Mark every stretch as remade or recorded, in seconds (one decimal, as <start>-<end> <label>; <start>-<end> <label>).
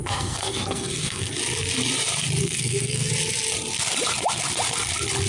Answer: 0.0-1.3 remade; 1.3-2.4 recorded; 2.4-3.1 remade; 3.1-5.3 recorded